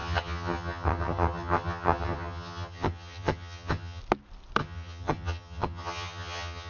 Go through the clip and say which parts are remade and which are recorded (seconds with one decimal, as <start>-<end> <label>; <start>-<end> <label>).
0.0-4.0 remade; 4.0-4.6 recorded; 4.6-6.7 remade